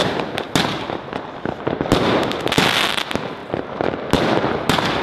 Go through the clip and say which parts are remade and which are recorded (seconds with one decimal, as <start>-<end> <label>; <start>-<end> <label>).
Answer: 0.0-5.0 recorded